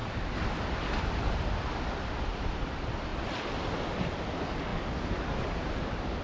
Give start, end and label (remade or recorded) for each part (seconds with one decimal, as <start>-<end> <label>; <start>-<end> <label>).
0.0-6.2 recorded